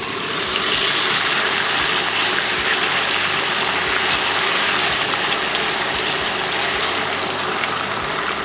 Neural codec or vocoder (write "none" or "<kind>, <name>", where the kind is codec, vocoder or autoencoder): none